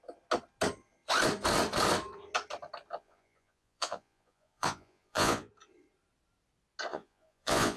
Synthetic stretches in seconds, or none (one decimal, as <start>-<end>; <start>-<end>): 3.0-5.5; 6.9-7.8